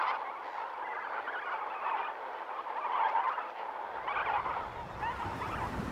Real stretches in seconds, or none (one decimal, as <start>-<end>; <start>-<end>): 0.0-5.9